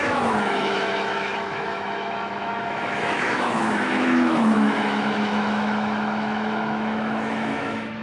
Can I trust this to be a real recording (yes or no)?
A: no